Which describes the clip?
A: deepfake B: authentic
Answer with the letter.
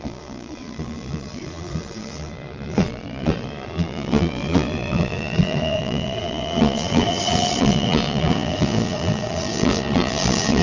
A